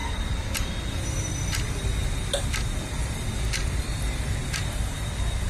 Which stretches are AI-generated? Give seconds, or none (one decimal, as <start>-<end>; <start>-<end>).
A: 0.0-1.3; 2.0-5.5